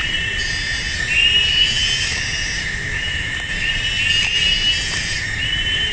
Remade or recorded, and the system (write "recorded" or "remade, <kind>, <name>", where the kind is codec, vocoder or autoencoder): recorded